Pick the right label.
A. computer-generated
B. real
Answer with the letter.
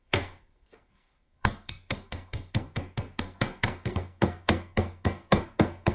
A